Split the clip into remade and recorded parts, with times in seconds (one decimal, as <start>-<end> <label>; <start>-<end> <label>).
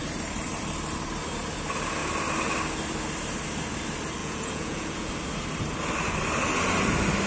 0.0-4.2 recorded; 4.2-5.1 remade; 5.1-7.3 recorded